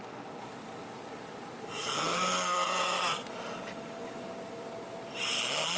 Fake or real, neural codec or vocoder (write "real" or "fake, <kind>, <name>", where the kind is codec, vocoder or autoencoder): real